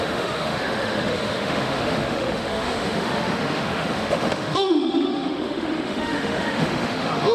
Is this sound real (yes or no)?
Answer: no